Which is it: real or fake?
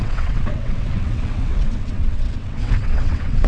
fake